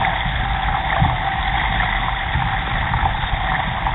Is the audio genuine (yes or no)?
yes